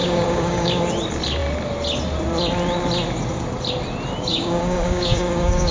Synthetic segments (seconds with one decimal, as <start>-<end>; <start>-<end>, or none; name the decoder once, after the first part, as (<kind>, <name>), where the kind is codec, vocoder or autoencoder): 0.0-0.7 (codec, DAC); 4.3-5.7